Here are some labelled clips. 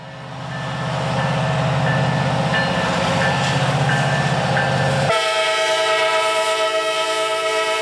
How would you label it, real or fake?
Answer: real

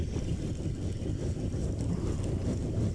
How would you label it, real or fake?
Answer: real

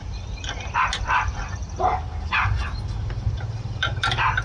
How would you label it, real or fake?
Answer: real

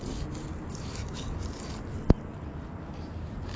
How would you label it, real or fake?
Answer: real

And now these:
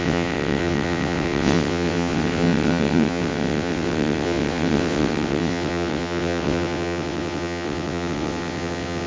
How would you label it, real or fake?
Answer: fake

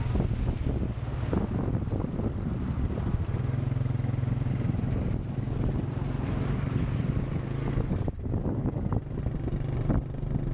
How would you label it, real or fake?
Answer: real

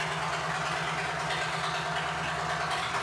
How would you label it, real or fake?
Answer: real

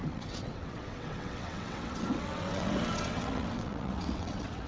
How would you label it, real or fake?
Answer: fake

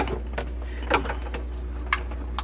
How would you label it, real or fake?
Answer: real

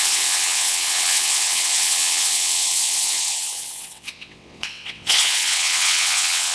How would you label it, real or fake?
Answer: fake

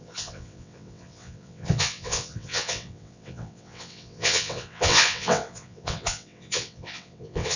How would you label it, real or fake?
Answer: fake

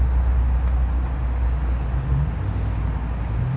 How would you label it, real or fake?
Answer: real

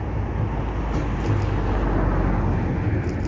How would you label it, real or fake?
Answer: real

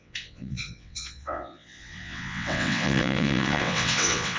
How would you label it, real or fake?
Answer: fake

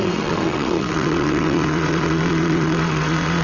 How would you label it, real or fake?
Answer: fake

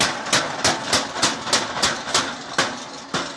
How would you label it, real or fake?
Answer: real